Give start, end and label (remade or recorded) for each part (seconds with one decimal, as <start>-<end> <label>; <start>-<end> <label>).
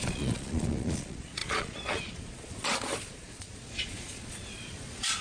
0.0-5.2 remade